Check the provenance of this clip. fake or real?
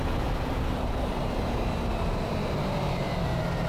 fake